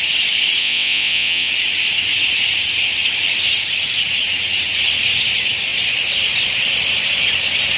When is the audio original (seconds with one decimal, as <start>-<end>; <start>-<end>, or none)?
0.0-0.6; 1.5-7.8